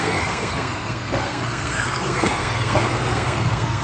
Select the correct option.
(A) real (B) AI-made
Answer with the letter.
B